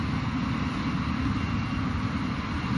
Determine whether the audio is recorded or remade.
recorded